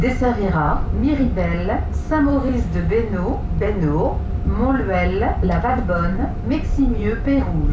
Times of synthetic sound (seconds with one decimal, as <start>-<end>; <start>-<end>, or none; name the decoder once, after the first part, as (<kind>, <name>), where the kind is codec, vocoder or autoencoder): 0.0-1.0 (vocoder, BigVGAN v2); 5.6-7.7